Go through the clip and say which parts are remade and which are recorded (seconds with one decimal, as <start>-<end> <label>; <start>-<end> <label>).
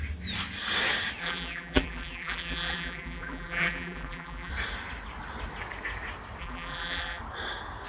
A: 0.0-1.2 recorded; 1.2-4.5 remade; 4.5-6.4 recorded; 6.4-7.2 remade; 7.2-7.9 recorded